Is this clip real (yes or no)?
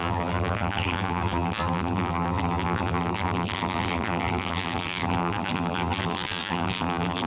no